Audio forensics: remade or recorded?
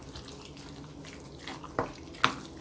recorded